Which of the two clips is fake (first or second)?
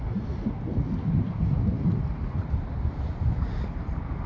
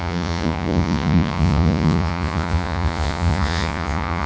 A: second